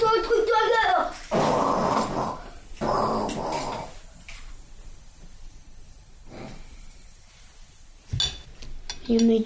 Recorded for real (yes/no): yes